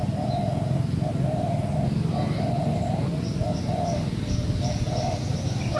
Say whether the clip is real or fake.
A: real